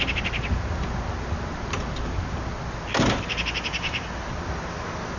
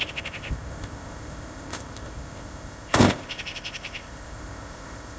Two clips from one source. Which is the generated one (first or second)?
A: second